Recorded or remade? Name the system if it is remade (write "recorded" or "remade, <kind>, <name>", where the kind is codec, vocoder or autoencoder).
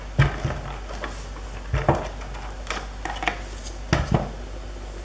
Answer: recorded